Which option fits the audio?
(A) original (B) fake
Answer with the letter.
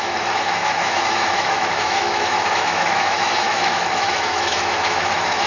B